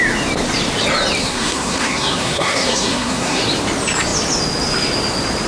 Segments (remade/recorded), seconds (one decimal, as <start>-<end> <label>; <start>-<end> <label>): 0.0-1.2 recorded; 1.2-3.4 remade; 3.4-5.5 recorded